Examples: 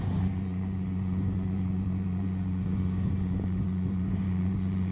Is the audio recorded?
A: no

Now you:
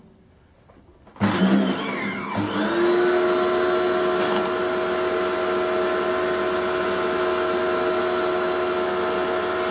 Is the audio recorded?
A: yes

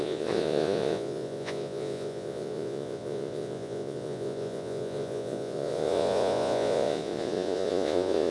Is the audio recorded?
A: no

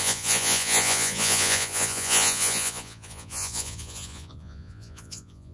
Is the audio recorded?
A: no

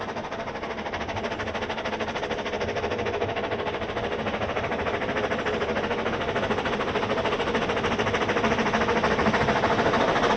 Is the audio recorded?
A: yes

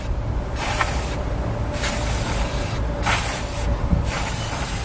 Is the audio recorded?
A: yes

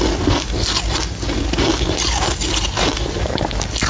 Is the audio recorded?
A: yes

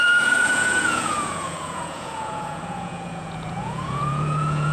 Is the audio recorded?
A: no